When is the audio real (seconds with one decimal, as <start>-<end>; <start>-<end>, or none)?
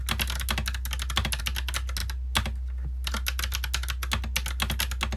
0.0-5.2